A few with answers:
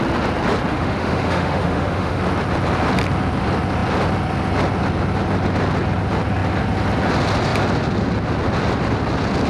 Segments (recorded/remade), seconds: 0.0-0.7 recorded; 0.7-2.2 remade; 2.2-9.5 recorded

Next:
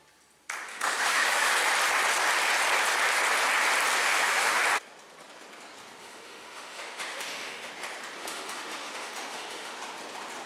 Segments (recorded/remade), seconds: 0.0-0.7 recorded; 0.7-1.5 remade; 1.5-4.0 recorded; 4.0-4.6 remade; 4.6-6.0 recorded; 6.0-7.7 remade; 7.7-8.2 recorded; 8.2-9.8 remade; 9.8-10.5 recorded

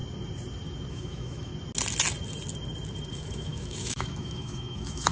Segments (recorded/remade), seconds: 0.0-0.9 recorded; 0.9-1.5 remade; 1.5-3.1 recorded; 3.1-5.1 remade

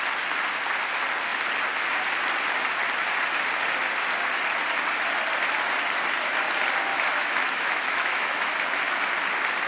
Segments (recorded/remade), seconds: 0.0-6.9 recorded; 6.9-8.5 remade; 8.5-9.7 recorded

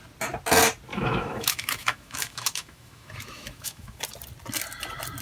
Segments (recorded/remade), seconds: 0.0-0.9 recorded; 0.9-4.0 remade; 4.0-5.2 recorded

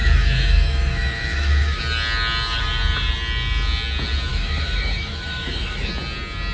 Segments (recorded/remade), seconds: 0.0-1.8 remade; 1.8-4.3 recorded; 4.3-5.9 remade; 5.9-6.5 recorded

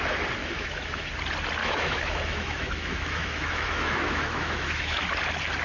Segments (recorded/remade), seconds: 0.0-0.4 recorded; 0.4-1.1 remade; 1.1-1.6 recorded; 1.6-5.0 remade; 5.0-5.6 recorded